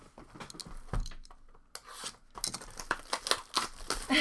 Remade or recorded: recorded